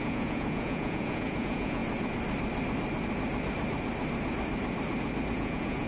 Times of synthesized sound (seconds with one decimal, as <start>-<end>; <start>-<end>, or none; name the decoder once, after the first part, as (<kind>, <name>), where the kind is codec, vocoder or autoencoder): 0.0-1.8 (vocoder, Vocos); 5.3-5.9